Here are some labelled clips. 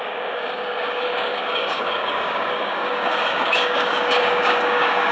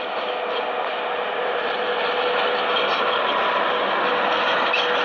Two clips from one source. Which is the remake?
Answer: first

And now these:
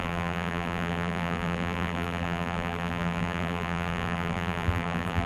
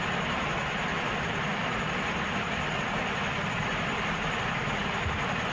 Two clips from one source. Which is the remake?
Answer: first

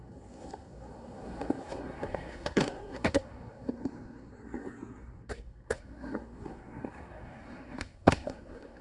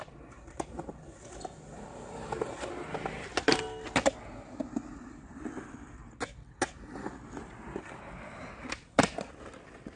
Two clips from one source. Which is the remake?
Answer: first